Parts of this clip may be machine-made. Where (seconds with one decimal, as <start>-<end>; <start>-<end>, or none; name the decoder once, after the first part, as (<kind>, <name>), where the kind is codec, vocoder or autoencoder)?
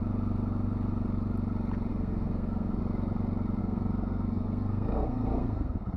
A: 1.9-2.8 (codec, SNAC); 3.6-6.0